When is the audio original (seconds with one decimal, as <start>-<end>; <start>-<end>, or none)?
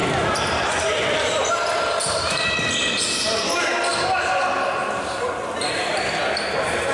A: 2.6-6.9